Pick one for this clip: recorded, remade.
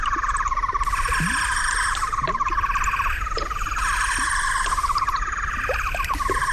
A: remade